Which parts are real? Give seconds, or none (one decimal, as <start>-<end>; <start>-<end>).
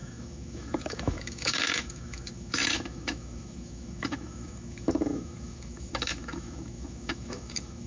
none